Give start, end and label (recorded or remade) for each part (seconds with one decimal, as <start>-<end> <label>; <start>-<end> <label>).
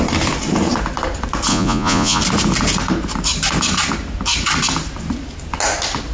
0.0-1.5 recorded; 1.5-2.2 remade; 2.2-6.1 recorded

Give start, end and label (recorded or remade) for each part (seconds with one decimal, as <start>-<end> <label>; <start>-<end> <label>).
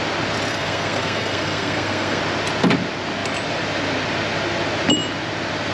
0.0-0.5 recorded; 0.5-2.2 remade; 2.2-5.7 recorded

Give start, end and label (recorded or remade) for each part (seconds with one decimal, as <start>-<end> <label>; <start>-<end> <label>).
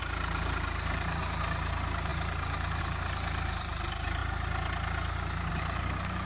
0.0-4.2 remade; 4.2-5.5 recorded; 5.5-6.3 remade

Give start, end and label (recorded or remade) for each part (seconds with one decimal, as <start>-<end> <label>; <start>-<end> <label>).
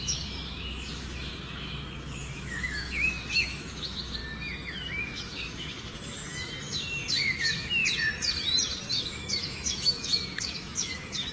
0.0-4.2 remade; 4.2-4.7 recorded; 4.7-7.8 remade; 7.8-8.9 recorded; 8.9-11.3 remade